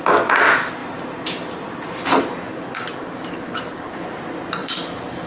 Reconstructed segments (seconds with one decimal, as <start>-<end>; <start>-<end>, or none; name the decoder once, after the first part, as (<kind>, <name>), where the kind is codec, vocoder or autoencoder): 0.8-4.0 (vocoder, BigVGAN v2)